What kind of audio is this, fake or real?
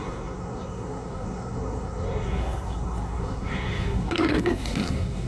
fake